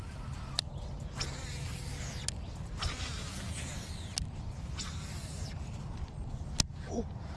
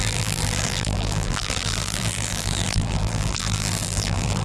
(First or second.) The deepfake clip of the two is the second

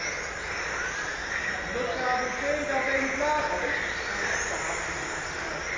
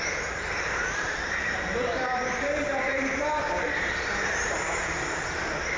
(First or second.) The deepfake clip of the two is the second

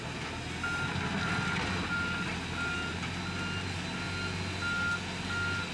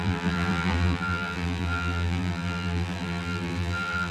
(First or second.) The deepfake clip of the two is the second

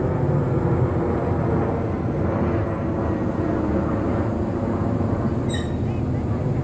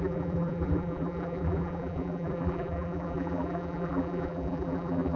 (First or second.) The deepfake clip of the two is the second